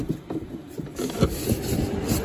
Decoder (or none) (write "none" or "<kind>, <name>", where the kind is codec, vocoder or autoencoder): none